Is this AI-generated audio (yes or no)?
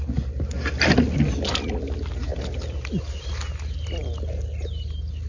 no